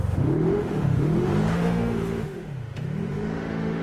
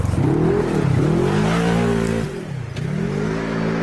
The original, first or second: second